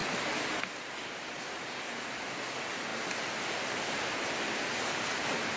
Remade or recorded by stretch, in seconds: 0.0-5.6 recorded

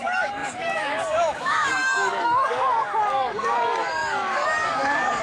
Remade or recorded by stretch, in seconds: 0.0-5.2 remade

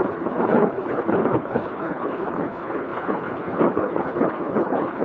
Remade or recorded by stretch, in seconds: 0.0-5.0 remade